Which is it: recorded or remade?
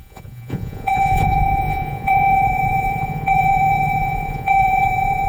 remade